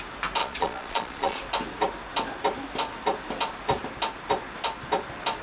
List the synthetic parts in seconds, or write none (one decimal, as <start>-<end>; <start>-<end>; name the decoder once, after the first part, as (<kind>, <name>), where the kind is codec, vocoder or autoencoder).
0.4-1.4 (vocoder, Vocos)